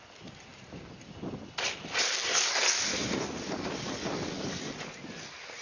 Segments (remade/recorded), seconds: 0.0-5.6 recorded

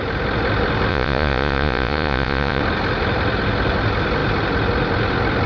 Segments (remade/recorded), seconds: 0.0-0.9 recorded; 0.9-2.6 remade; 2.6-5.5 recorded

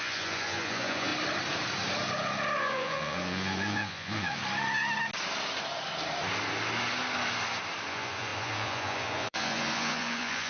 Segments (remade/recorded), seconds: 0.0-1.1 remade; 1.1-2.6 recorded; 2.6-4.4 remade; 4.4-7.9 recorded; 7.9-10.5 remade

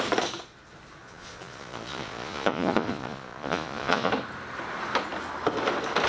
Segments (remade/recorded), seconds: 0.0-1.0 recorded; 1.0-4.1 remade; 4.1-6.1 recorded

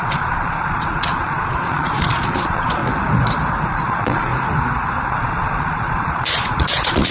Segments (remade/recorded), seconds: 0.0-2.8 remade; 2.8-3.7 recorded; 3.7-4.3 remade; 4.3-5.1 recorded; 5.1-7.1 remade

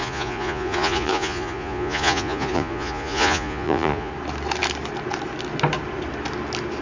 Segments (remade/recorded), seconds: 0.0-4.1 remade; 4.1-6.8 recorded

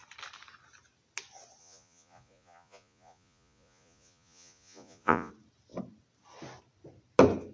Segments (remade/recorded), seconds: 0.0-1.6 recorded; 1.6-5.3 remade; 5.3-7.5 recorded

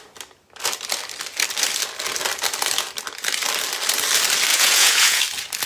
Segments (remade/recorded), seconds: 0.0-4.5 recorded; 4.5-5.2 remade; 5.2-5.7 recorded